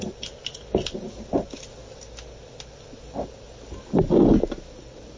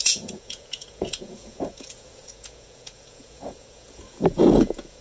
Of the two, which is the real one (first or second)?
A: first